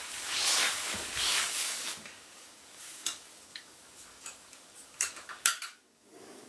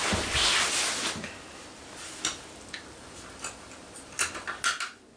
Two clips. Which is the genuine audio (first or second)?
second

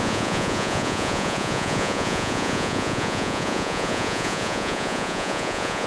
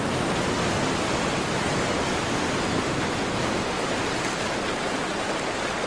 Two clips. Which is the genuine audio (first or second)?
second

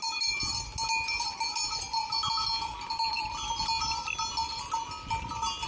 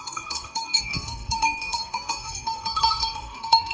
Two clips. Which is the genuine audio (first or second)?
first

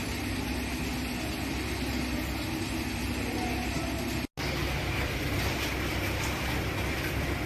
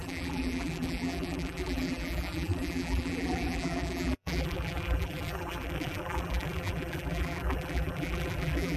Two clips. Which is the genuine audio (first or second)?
first